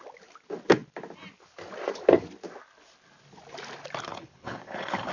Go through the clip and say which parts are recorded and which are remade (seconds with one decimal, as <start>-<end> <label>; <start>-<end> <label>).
0.0-4.1 recorded; 4.1-5.1 remade

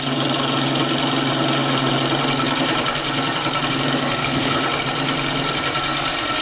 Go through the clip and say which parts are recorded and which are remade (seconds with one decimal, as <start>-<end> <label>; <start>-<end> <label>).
0.0-4.2 recorded; 4.2-4.8 remade; 4.8-6.4 recorded

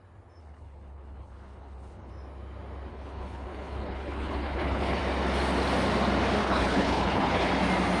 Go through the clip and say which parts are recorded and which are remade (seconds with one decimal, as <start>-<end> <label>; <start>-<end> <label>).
0.0-0.4 recorded; 0.4-2.1 remade; 2.1-2.9 recorded; 2.9-5.0 remade; 5.0-6.4 recorded; 6.4-7.5 remade; 7.5-8.0 recorded

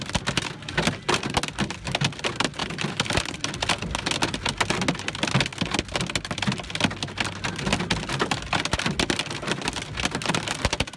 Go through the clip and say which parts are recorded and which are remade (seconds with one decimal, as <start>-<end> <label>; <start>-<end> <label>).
0.0-11.0 recorded

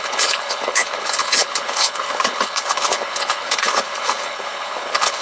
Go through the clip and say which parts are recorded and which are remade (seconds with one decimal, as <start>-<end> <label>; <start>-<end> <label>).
0.0-5.2 remade